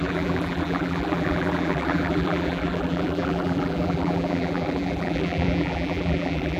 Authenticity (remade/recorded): remade